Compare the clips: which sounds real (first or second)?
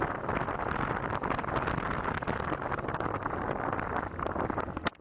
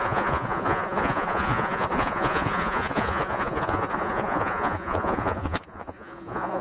first